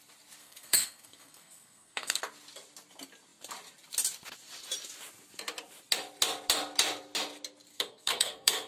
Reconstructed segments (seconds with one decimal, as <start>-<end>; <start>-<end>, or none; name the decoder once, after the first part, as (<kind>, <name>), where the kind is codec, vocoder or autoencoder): 0.4-2.2 (codec, SNAC); 7.7-8.7